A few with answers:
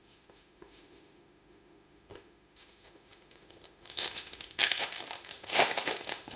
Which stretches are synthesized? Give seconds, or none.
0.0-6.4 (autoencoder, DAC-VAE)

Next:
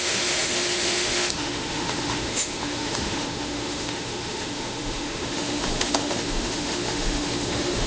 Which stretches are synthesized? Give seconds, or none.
0.0-7.9 (autoencoder, DAC-VAE)

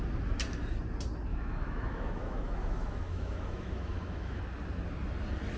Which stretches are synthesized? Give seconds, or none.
1.3-4.4 (autoencoder, DAC-VAE)

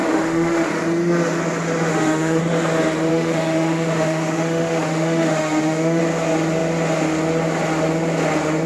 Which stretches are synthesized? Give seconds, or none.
0.0-0.7 (autoencoder, DAC-VAE); 1.9-2.4; 3.1-6.0

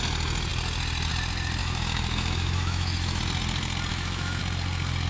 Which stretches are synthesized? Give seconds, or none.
1.6-3.2 (autoencoder, DAC-VAE); 3.9-4.4

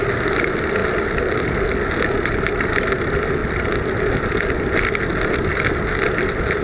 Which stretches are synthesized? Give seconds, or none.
none